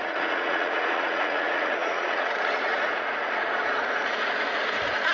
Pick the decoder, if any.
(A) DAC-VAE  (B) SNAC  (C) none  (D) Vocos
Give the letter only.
D